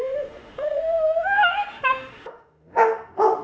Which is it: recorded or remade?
remade